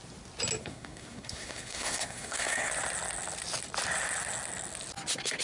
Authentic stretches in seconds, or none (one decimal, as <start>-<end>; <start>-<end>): 0.0-0.6; 2.7-5.4